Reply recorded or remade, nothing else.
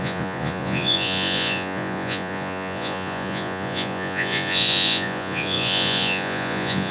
remade